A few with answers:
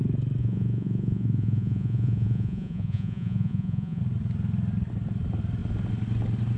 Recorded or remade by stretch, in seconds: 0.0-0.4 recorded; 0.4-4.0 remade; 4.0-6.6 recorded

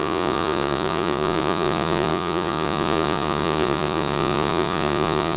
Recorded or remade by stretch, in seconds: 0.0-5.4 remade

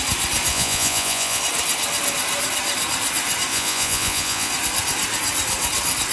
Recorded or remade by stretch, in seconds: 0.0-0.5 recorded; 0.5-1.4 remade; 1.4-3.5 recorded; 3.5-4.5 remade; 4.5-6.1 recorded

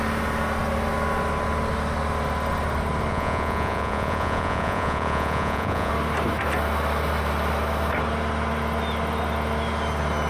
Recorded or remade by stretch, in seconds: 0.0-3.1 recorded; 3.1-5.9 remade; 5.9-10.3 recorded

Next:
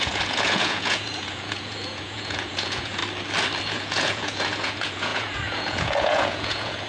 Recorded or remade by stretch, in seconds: 0.0-3.0 remade; 3.0-3.7 recorded; 3.7-6.9 remade

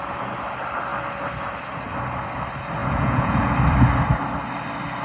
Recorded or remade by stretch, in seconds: 0.0-2.8 recorded; 2.8-3.4 remade; 3.4-5.0 recorded

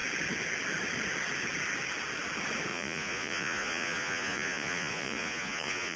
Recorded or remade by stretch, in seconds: 0.0-2.7 recorded; 2.7-6.0 remade